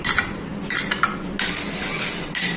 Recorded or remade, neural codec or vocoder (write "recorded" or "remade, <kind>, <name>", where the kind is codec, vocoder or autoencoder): recorded